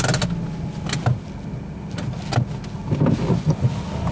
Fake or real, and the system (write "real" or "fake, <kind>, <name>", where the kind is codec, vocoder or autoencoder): real